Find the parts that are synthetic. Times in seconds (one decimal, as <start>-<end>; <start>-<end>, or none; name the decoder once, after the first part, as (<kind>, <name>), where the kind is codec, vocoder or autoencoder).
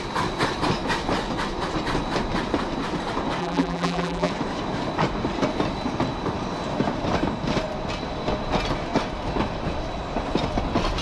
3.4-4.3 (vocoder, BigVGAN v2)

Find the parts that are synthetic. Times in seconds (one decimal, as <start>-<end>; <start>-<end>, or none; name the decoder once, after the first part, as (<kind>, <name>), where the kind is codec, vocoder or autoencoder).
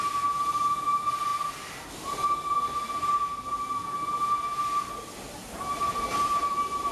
5.4-6.9 (vocoder, BigVGAN v2)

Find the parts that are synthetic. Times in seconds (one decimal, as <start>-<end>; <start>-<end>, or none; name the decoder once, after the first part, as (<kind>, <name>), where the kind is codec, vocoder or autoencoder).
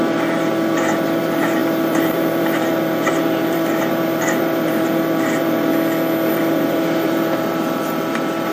0.0-5.7 (vocoder, BigVGAN v2); 6.3-8.5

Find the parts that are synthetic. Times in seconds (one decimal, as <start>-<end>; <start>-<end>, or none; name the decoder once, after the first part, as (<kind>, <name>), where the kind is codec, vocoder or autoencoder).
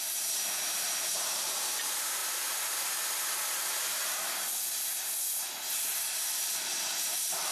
0.0-2.2 (vocoder, BigVGAN v2); 6.5-7.5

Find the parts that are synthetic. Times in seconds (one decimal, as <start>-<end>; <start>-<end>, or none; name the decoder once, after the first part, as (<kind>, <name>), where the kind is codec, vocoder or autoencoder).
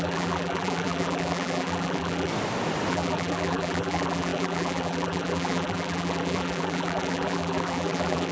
0.0-2.3 (vocoder, BigVGAN v2); 2.9-8.3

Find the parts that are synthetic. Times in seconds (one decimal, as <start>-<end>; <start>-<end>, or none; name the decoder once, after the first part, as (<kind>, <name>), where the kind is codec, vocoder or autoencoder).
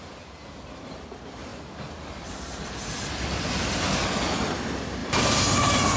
5.0-5.6 (vocoder, BigVGAN v2)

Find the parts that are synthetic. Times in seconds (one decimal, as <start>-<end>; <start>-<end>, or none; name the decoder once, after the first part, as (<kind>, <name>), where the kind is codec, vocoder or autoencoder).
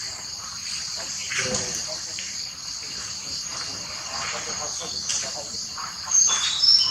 5.1-6.9 (vocoder, BigVGAN v2)